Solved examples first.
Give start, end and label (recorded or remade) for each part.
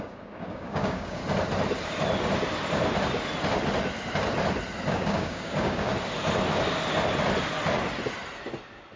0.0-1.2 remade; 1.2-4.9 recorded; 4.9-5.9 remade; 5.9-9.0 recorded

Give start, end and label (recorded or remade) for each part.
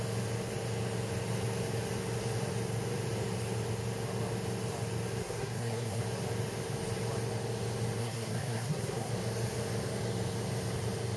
0.0-5.2 recorded; 5.2-6.0 remade; 6.0-8.0 recorded; 8.0-9.1 remade; 9.1-11.2 recorded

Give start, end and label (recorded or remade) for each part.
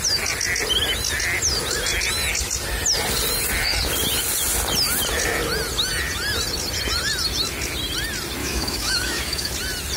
0.0-8.4 recorded; 8.4-9.5 remade; 9.5-10.0 recorded